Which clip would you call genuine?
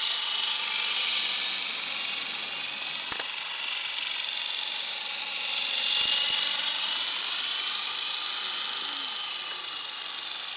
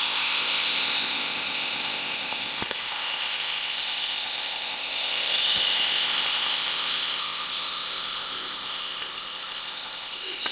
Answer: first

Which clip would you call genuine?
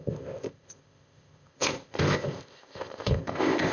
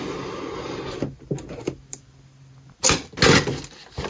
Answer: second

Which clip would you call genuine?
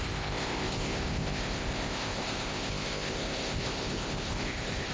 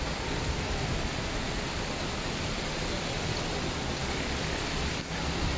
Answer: second